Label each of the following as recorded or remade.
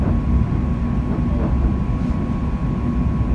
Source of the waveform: recorded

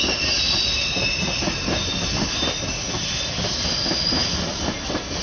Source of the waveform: recorded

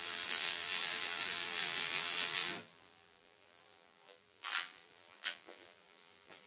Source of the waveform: remade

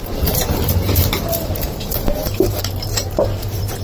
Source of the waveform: remade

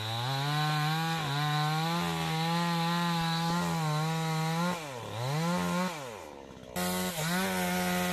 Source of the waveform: recorded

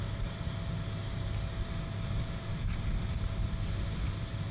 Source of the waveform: recorded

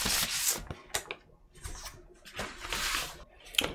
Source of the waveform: recorded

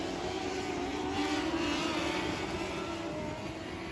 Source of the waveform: recorded